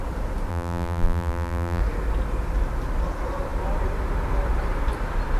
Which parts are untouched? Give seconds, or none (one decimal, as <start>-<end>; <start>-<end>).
0.0-0.5; 1.8-5.4

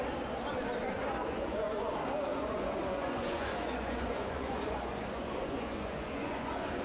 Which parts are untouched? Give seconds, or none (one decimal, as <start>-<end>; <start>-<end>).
0.0-1.2; 1.9-2.3